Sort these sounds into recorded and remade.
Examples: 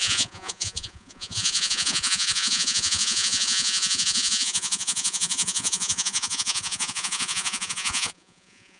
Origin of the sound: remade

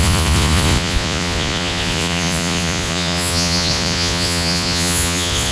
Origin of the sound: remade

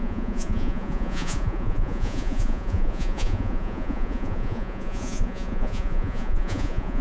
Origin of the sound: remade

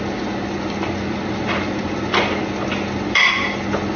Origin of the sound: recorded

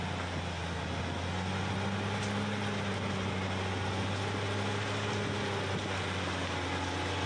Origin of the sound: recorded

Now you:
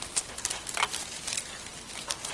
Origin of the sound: recorded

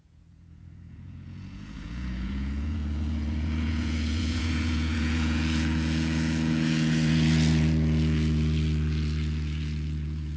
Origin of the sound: remade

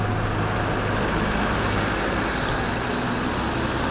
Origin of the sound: recorded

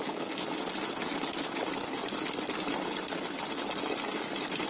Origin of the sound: recorded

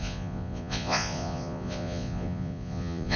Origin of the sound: remade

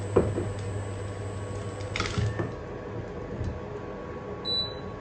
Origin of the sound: recorded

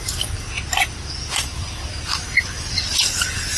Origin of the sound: recorded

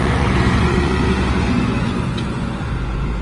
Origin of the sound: remade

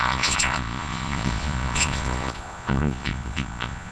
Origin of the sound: remade